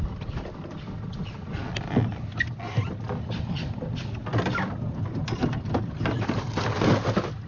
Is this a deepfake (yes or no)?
no